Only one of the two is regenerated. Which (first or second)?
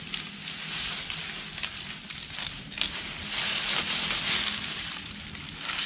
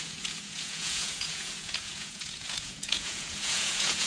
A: second